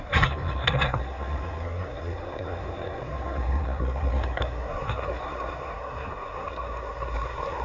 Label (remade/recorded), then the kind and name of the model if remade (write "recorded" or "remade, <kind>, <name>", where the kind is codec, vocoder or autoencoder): remade, codec, SNAC